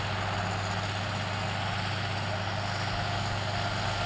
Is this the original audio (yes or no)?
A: yes